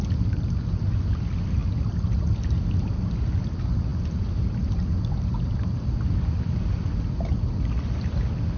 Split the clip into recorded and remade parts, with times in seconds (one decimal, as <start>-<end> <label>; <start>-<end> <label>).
0.0-8.6 recorded